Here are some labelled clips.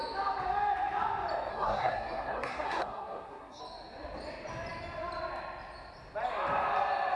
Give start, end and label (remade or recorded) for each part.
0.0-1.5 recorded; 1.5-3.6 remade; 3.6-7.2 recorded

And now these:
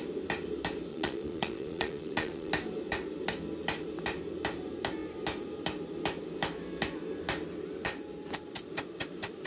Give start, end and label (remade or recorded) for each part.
0.0-0.9 recorded; 0.9-2.5 remade; 2.5-9.5 recorded

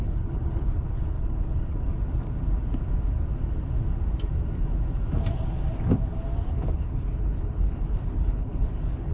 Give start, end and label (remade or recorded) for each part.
0.0-1.9 remade; 1.9-6.5 recorded; 6.5-9.1 remade

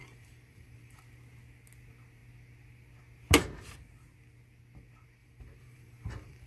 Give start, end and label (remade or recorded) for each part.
0.0-1.0 remade; 1.0-5.2 recorded; 5.2-6.5 remade

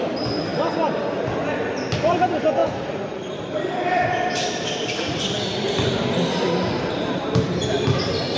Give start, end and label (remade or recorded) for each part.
0.0-0.5 recorded; 0.5-1.2 remade; 1.2-2.6 recorded; 2.6-5.9 remade; 5.9-8.4 recorded

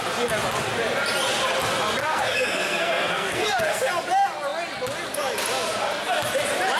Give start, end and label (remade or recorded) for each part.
0.0-2.0 recorded; 2.0-3.9 remade; 3.9-6.8 recorded

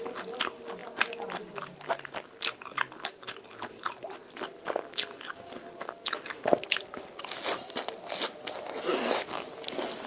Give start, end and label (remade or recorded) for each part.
0.0-10.1 recorded

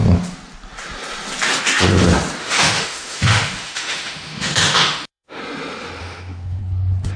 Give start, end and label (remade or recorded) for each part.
0.0-2.4 recorded; 2.4-5.4 remade; 5.4-6.0 recorded; 6.0-6.6 remade; 6.6-7.2 recorded